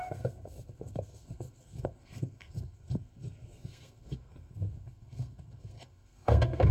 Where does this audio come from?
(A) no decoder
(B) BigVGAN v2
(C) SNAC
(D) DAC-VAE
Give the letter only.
C